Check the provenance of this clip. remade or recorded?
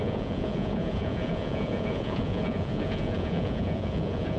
remade